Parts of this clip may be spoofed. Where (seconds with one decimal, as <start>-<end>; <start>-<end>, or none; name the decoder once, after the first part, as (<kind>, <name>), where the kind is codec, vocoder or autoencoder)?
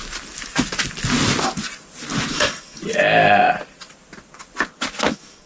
2.3-2.8 (autoencoder, DAC-VAE); 5.1-5.5